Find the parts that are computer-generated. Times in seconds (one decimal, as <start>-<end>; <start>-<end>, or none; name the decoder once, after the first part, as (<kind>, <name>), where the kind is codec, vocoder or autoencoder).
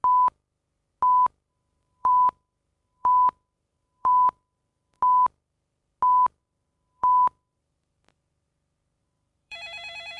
1.5-5.0 (vocoder, BigVGAN v2); 6.4-7.6; 9.0-10.2